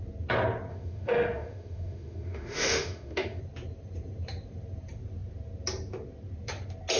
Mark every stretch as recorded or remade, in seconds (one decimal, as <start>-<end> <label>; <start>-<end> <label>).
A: 0.0-0.7 recorded; 0.7-3.4 remade; 3.4-7.0 recorded